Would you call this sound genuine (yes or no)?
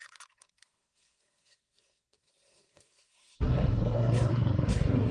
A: no